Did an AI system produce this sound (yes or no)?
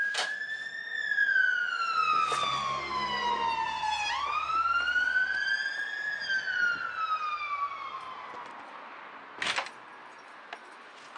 no